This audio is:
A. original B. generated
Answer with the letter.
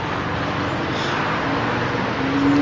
A